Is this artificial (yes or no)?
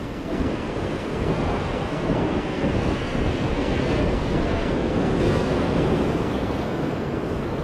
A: yes